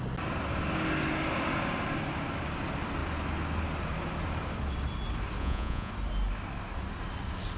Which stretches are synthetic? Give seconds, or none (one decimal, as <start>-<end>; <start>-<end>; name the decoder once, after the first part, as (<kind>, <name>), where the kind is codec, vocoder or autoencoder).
5.4-5.9 (vocoder, Vocos)